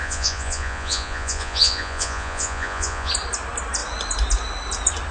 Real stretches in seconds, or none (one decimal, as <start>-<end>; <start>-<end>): 3.1-5.1